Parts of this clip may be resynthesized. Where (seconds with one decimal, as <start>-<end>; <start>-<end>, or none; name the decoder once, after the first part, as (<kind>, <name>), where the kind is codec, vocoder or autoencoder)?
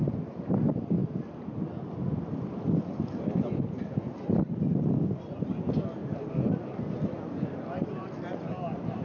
6.0-6.8 (vocoder, BigVGAN v2)